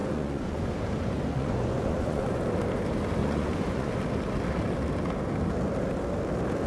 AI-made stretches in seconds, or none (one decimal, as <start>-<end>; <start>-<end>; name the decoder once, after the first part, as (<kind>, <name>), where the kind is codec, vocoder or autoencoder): 0.0-0.6 (vocoder, Vocos); 1.3-2.4; 3.2-3.9